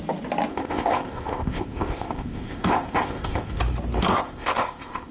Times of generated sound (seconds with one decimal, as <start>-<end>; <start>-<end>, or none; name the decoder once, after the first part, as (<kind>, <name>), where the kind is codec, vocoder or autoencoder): 0.5-3.6 (codec, ZipCodec); 4.1-5.1